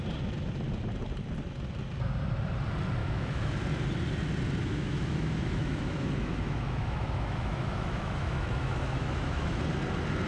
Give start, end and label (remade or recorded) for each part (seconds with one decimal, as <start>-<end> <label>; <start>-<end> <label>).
0.0-3.0 recorded; 3.0-3.5 remade; 3.5-4.6 recorded; 4.6-9.6 remade; 9.6-10.3 recorded